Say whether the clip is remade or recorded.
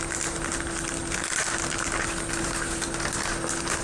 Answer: recorded